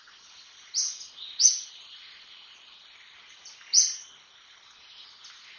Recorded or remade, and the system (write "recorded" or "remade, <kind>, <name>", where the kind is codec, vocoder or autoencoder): recorded